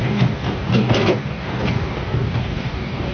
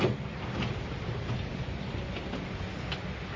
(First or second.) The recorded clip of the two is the second